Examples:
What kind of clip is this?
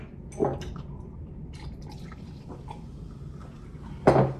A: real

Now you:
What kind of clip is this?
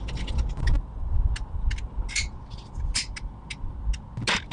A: real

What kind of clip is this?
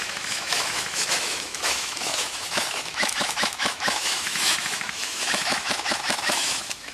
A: fake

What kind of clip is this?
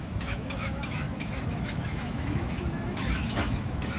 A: fake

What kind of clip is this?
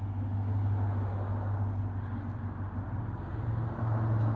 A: real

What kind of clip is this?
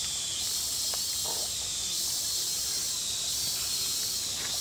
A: real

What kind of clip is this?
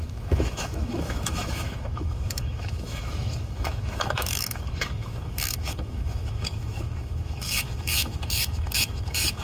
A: fake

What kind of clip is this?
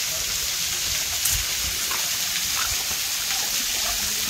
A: real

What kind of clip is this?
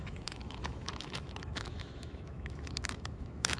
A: fake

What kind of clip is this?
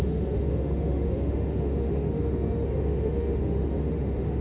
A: fake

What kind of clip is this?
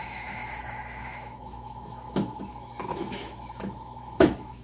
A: fake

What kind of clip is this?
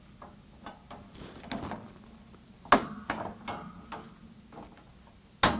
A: real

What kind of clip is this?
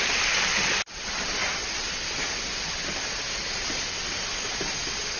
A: real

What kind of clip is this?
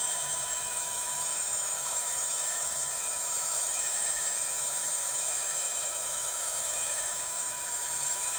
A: fake